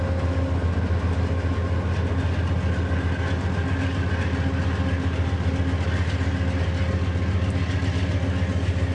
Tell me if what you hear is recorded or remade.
recorded